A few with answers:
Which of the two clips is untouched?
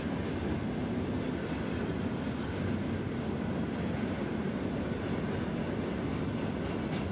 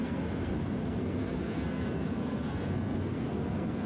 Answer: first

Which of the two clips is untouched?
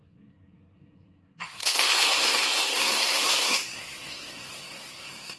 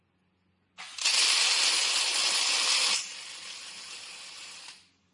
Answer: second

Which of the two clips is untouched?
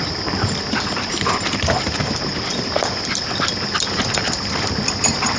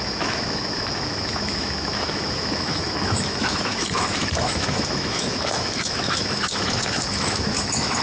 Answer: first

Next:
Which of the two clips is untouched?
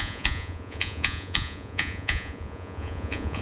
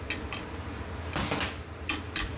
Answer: second